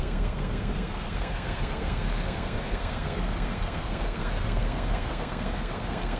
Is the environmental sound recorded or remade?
remade